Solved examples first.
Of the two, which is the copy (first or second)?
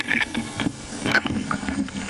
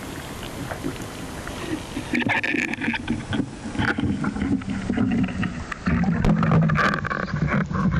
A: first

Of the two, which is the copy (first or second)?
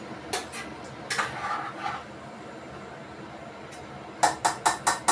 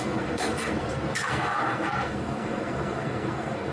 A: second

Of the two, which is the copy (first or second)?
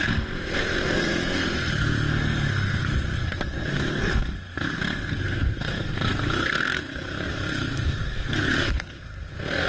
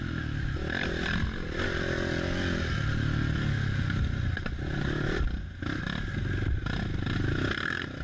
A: first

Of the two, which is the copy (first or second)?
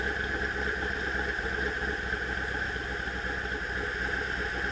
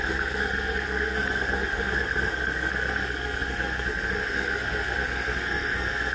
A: second